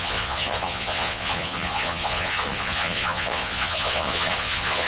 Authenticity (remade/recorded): remade